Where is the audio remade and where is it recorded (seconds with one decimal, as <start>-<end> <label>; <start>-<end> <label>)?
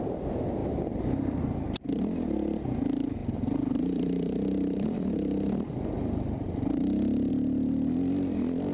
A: 0.0-0.6 recorded; 0.6-1.4 remade; 1.4-3.2 recorded; 3.2-7.3 remade; 7.3-8.7 recorded